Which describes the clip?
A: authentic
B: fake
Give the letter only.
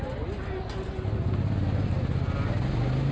A